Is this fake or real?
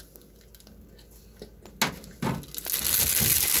real